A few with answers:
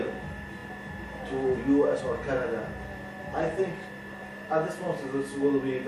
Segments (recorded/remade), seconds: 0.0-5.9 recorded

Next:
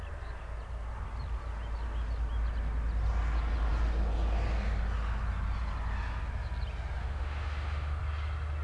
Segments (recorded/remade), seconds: 0.0-7.0 recorded; 7.0-8.0 remade; 8.0-8.6 recorded